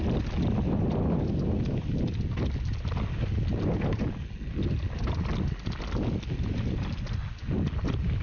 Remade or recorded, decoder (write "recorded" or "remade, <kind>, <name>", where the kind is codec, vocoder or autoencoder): recorded